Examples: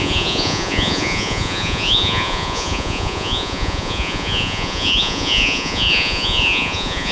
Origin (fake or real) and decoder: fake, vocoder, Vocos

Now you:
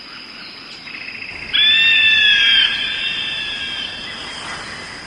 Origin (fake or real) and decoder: real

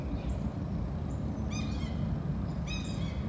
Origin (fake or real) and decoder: real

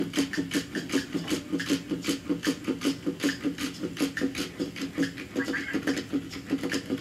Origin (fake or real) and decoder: real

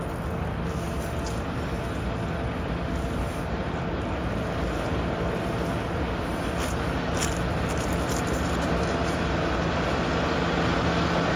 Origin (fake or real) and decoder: real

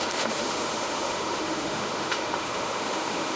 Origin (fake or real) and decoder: fake, autoencoder, DAC-VAE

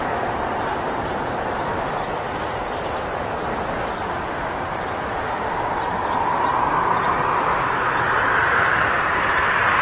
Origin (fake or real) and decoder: fake, vocoder, BigVGAN v2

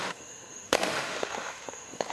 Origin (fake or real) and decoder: fake, autoencoder, DAC-VAE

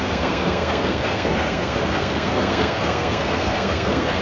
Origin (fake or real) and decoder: fake, codec, SNAC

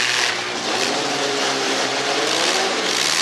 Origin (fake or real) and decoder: fake, vocoder, BigVGAN v2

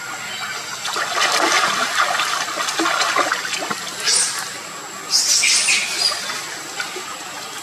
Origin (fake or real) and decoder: real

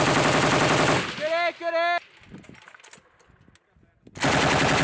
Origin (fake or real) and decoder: real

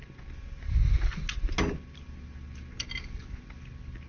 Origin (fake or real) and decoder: real